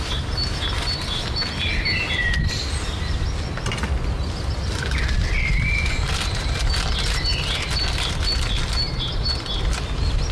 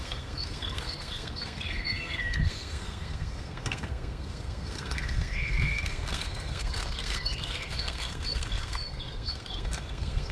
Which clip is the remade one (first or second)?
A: second